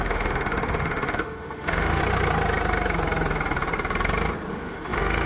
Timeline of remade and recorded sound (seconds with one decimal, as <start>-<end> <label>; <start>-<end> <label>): 0.0-2.0 remade; 2.0-4.5 recorded; 4.5-5.3 remade